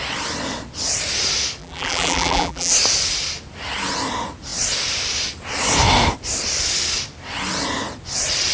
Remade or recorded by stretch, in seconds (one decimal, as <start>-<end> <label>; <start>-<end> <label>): 0.0-1.6 recorded; 1.6-2.7 remade; 2.7-8.5 recorded

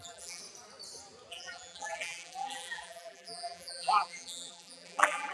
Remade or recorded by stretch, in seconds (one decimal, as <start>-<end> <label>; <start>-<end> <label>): 0.0-0.4 remade; 0.4-1.3 recorded; 1.3-5.3 remade

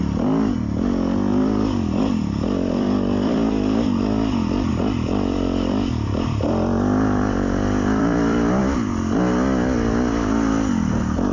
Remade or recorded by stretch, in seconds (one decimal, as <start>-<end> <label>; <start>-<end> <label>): 0.0-1.3 recorded; 1.3-3.5 remade; 3.5-4.7 recorded; 4.7-8.6 remade; 8.6-11.3 recorded

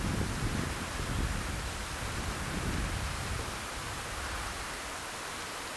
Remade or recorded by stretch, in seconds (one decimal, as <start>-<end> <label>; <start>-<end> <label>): 0.0-1.8 recorded; 1.8-5.3 remade; 5.3-5.8 recorded